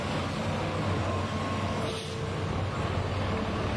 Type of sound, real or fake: real